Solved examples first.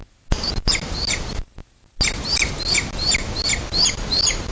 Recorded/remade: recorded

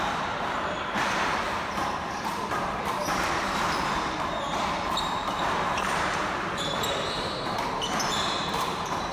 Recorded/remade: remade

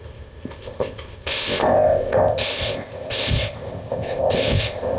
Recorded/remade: remade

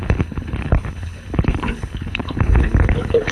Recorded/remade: remade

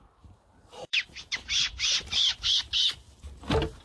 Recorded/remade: remade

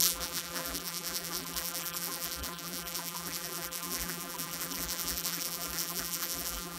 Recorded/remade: remade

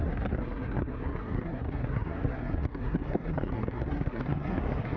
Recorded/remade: remade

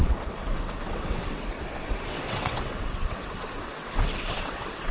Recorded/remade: remade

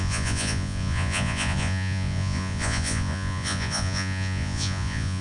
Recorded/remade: remade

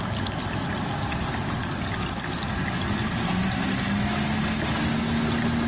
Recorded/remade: recorded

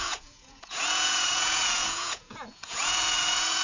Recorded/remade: remade